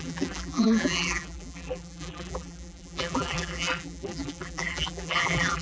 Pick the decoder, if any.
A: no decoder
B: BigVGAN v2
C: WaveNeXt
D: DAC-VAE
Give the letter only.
B